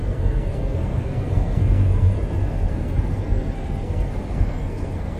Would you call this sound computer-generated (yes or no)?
yes